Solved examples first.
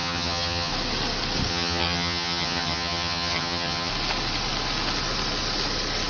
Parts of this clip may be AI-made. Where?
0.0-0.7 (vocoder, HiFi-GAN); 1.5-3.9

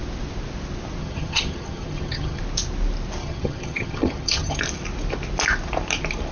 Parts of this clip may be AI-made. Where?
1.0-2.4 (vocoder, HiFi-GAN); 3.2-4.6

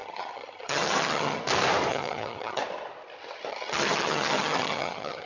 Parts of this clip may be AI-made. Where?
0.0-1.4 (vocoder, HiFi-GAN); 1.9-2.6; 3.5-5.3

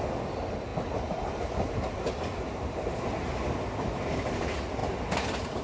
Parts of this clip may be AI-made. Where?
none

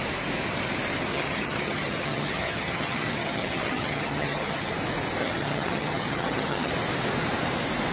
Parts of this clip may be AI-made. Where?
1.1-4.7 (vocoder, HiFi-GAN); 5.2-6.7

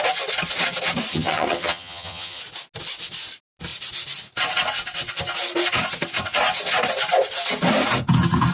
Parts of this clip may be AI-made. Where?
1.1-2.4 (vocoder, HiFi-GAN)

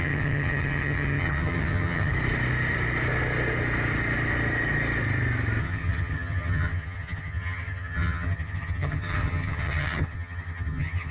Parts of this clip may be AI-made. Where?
0.0-2.1 (vocoder, HiFi-GAN); 5.6-11.1